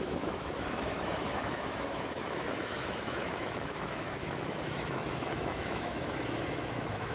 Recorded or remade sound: remade